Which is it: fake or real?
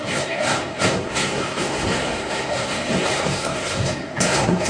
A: fake